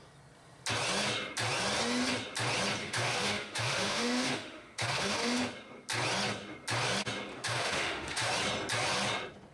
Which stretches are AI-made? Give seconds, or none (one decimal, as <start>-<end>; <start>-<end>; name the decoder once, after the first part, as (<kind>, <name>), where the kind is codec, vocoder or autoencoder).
2.8-5.4 (autoencoder, DAC-VAE); 7.3-8.3